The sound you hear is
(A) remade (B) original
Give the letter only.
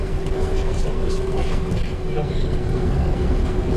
A